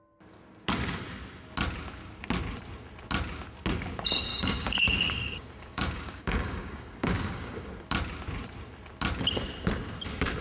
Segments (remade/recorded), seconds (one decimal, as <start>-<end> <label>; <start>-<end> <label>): 0.0-4.3 recorded; 4.3-7.7 remade; 7.7-10.4 recorded

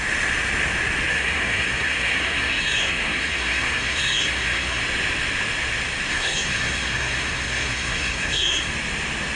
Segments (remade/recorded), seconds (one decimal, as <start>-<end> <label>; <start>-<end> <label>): 0.0-1.1 recorded; 1.1-4.8 remade; 4.8-6.1 recorded; 6.1-8.7 remade; 8.7-9.4 recorded

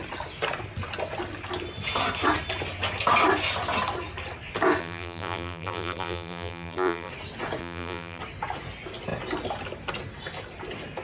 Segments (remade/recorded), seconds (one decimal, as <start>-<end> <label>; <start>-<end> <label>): 0.0-4.8 recorded; 4.8-7.1 remade; 7.1-7.6 recorded; 7.6-8.2 remade; 8.2-11.0 recorded

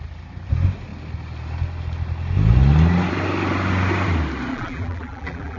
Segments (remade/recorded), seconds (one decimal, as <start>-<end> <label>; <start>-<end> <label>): 0.0-4.5 recorded; 4.5-5.6 remade

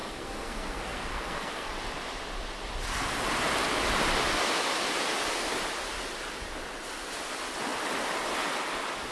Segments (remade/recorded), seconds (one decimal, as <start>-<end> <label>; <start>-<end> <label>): 0.0-1.7 remade; 1.7-9.1 recorded